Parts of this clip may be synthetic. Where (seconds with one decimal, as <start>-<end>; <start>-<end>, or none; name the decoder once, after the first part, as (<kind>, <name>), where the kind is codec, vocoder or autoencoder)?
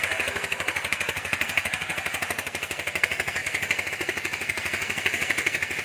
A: 0.0-5.8 (codec, SNAC)